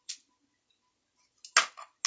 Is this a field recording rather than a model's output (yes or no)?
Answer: yes